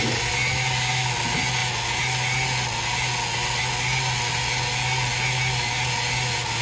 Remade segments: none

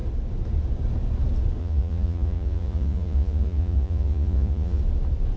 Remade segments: 1.6-4.8 (vocoder, Vocos)

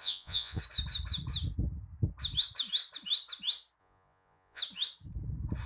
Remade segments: 0.0-0.6 (vocoder, Vocos); 3.8-4.6

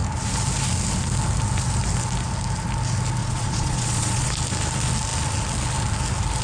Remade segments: 3.2-4.3 (vocoder, Vocos)

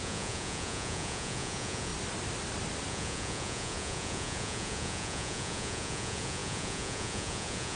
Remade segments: 0.0-1.9 (vocoder, Vocos); 2.9-7.8

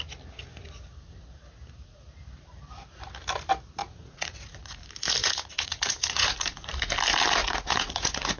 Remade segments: 3.8-4.8 (vocoder, Vocos); 5.2-6.7; 7.4-8.4